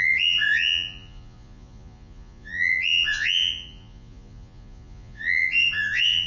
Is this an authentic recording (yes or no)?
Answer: no